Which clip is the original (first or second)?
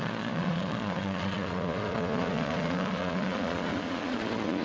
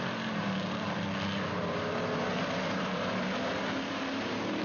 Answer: second